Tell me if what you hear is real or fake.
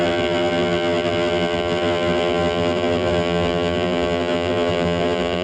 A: fake